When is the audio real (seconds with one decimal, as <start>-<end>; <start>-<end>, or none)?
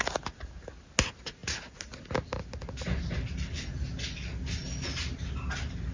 0.0-5.9